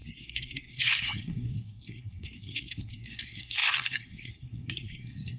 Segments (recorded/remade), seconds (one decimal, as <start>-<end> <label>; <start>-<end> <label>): 0.0-5.4 remade